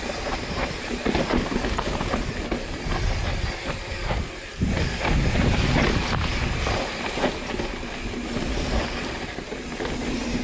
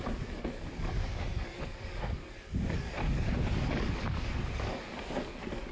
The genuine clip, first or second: first